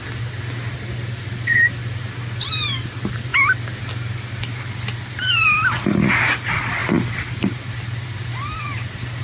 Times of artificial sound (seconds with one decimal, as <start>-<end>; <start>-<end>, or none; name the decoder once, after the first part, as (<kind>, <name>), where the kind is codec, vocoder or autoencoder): none